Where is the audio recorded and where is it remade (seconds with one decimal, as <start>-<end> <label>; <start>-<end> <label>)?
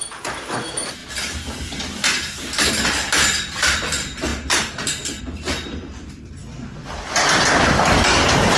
0.0-8.6 recorded